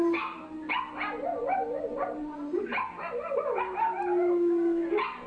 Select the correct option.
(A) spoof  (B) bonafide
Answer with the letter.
B